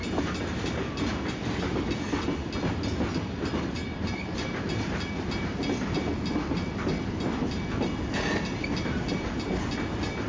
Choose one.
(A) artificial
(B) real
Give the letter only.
B